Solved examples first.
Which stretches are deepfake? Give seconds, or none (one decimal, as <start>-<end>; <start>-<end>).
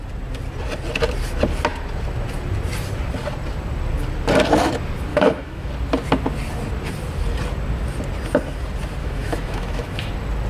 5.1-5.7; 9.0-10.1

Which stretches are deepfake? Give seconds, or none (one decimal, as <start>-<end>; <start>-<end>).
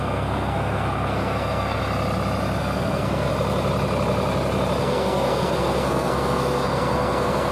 0.0-1.8; 2.6-3.3; 4.8-7.5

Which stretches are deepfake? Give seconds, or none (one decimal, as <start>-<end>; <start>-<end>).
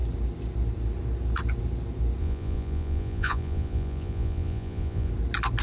2.2-5.1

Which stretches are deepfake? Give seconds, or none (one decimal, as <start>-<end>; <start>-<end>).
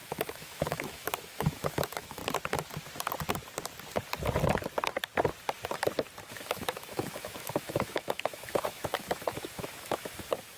0.0-2.2; 6.3-10.6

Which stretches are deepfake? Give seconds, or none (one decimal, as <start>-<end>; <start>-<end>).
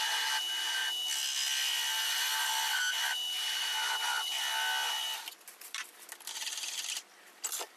none